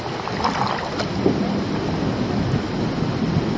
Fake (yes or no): no